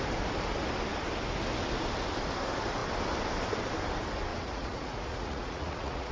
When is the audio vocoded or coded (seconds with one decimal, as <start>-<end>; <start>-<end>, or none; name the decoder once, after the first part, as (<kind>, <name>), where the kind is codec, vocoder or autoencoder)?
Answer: 4.3-6.1 (vocoder, Vocos)